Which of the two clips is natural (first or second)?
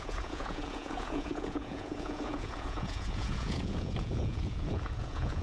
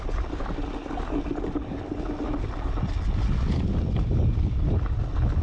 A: second